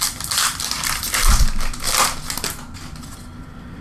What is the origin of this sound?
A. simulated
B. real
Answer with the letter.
B